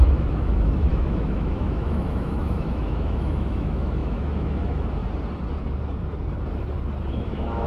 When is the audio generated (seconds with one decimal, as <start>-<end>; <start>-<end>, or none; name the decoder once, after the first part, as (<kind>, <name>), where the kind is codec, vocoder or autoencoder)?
0.0-5.0 (autoencoder, DAC-VAE); 7.1-7.7